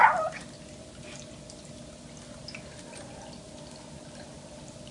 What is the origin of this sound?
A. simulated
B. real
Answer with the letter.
B